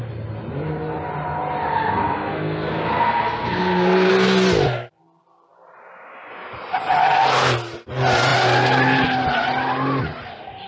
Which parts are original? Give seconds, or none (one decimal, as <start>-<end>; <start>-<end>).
0.0-1.7; 4.1-10.7

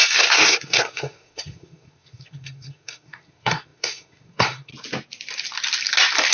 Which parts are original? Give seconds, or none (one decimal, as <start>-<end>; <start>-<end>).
4.7-6.3

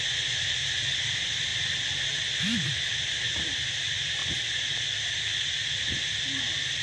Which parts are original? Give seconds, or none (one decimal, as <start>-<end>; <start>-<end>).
0.0-6.8

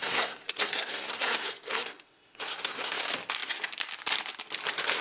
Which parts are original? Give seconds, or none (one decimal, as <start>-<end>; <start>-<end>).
3.0-5.0

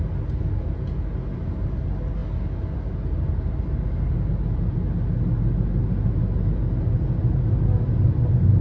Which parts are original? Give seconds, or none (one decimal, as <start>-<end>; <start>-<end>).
0.0-8.6

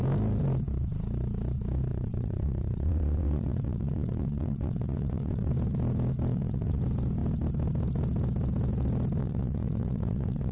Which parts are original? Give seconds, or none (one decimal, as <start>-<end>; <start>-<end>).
0.0-1.9; 5.5-6.3; 6.8-9.2